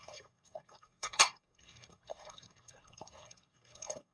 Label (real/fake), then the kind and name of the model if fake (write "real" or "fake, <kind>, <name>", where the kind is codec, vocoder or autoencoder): fake, codec, SNAC